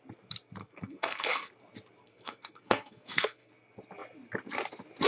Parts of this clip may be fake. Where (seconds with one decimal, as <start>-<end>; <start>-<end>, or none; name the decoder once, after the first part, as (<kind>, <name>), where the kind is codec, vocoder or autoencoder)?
0.6-1.5 (codec, SNAC); 2.0-3.5